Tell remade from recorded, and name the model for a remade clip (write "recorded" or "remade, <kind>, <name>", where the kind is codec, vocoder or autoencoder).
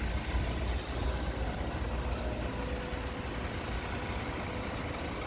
recorded